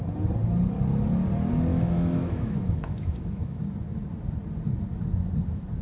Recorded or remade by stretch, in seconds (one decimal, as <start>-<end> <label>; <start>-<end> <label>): 0.0-1.7 recorded; 1.7-3.6 remade; 3.6-5.8 recorded